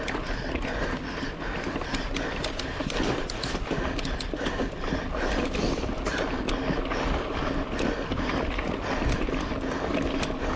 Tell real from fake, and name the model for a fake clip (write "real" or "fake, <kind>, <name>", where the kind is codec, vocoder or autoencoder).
real